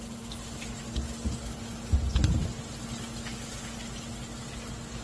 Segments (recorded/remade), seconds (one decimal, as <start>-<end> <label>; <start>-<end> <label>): 0.0-5.0 recorded